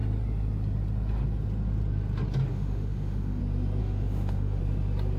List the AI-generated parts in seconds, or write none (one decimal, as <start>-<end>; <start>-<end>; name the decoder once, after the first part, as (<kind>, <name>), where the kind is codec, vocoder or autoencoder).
2.5-3.4 (autoencoder, DAC-VAE); 3.8-4.6

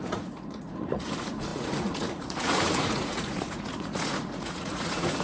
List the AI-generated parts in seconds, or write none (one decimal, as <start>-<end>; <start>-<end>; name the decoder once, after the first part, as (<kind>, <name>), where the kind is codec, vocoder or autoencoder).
0.0-5.2 (vocoder, Vocos)

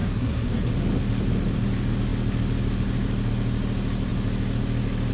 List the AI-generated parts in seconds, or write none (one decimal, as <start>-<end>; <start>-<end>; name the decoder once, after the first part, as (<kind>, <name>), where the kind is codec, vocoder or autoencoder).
0.0-0.7 (codec, SNAC)

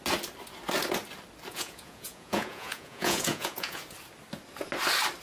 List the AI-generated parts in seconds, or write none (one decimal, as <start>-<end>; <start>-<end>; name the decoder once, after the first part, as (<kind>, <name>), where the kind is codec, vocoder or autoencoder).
1.5-3.8 (vocoder, Vocos)

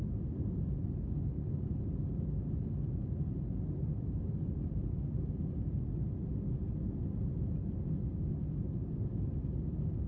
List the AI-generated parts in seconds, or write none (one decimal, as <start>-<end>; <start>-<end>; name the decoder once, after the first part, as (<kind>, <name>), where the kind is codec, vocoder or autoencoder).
none

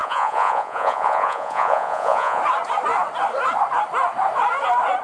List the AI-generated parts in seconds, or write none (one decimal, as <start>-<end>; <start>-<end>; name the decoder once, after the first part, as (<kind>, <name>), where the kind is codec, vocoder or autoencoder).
0.0-2.4 (vocoder, Vocos)

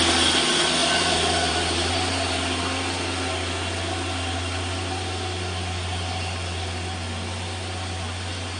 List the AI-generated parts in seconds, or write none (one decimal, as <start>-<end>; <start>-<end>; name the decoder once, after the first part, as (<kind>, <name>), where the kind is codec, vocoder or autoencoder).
0.8-1.9 (vocoder, BigVGAN v2)